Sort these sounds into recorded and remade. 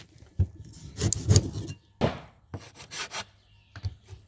recorded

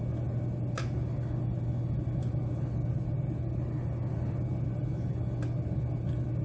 recorded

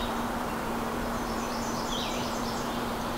remade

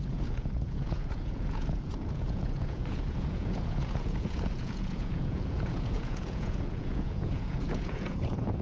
remade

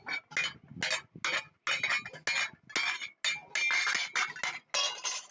recorded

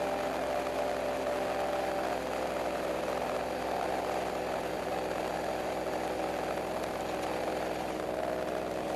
recorded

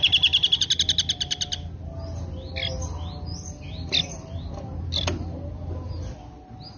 recorded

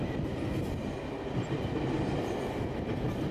recorded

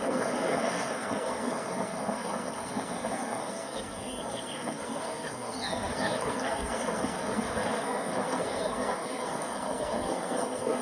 remade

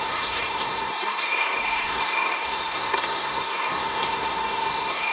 remade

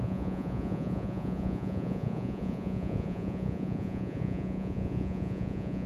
remade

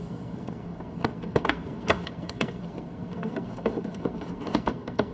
remade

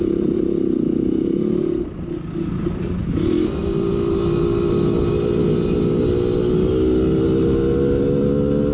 recorded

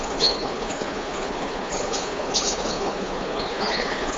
remade